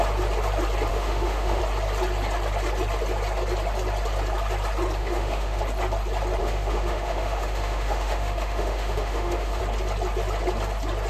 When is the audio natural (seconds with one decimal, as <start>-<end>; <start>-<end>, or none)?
0.0-0.9; 1.6-5.0; 5.6-6.4; 9.6-11.1